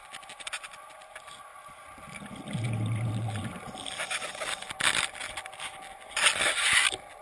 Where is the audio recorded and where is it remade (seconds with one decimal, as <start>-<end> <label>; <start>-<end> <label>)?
0.0-7.2 recorded